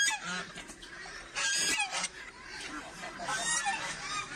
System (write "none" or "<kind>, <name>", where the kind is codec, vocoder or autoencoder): vocoder, BigVGAN v2